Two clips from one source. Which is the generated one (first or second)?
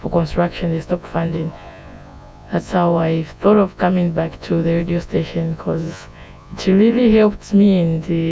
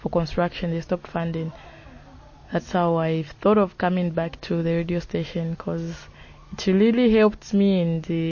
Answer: first